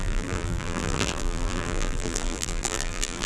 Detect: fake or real fake